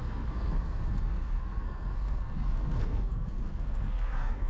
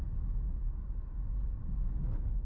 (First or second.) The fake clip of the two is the first